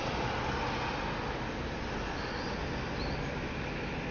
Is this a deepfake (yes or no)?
no